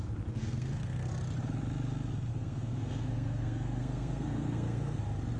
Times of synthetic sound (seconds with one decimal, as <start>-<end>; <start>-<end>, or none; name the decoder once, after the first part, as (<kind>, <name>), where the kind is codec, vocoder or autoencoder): 0.4-1.1 (codec, SNAC); 2.3-5.0